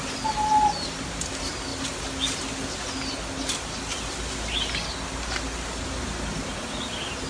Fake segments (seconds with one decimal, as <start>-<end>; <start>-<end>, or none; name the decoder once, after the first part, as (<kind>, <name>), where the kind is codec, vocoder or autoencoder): none